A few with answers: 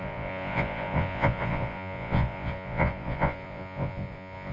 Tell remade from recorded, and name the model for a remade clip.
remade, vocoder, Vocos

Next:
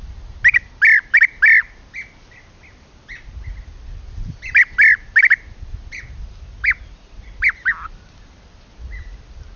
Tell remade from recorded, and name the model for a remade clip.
recorded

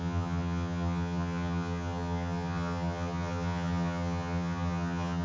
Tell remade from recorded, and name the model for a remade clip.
remade, vocoder, HiFi-GAN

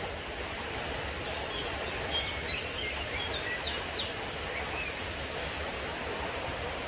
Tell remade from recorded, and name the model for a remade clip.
recorded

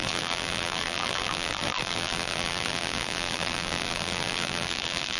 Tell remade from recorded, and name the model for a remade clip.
remade, vocoder, BigVGAN v2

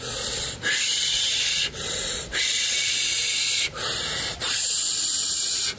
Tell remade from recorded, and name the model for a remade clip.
recorded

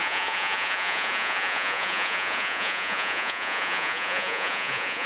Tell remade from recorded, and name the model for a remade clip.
remade, vocoder, Vocos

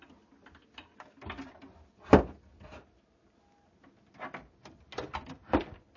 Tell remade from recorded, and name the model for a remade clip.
recorded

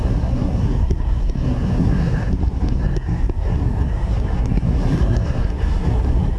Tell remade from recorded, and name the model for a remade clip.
remade, codec, SNAC